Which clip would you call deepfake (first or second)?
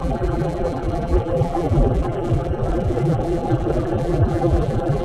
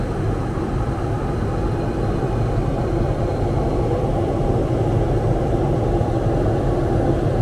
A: first